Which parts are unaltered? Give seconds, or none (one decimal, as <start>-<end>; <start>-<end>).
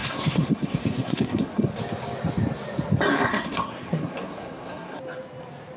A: 1.7-3.1; 5.0-5.8